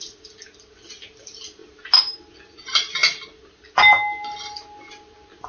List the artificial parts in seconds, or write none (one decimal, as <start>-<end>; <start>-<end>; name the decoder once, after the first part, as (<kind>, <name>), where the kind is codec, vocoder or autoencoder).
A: none